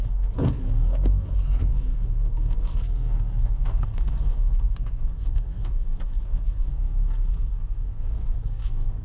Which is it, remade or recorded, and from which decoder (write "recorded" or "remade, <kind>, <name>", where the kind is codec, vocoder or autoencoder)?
remade, codec, SNAC